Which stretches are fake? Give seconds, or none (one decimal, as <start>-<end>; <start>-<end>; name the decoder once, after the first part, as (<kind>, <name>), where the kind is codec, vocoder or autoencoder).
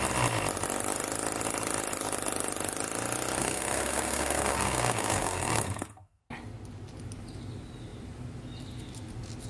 3.4-6.2 (codec, SNAC)